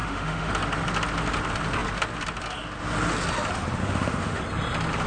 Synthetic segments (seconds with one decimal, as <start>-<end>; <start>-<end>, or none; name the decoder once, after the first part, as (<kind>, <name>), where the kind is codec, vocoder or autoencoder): 0.0-0.5 (autoencoder, DAC-VAE); 3.8-4.4